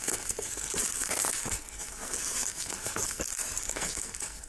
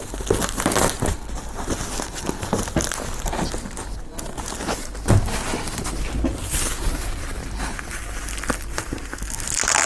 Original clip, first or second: second